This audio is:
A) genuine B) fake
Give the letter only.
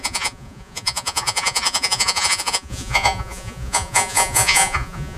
B